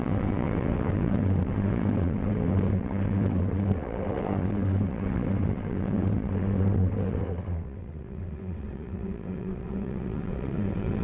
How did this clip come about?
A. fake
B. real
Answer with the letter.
A